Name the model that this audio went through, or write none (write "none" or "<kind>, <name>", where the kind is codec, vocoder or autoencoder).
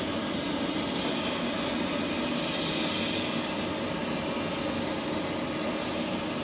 none